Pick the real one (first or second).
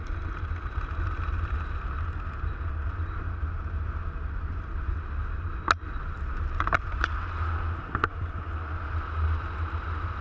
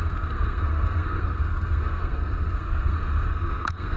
first